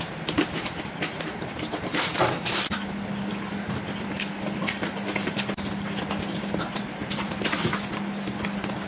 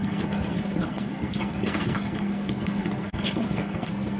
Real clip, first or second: first